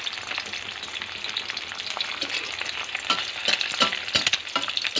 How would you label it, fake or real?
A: fake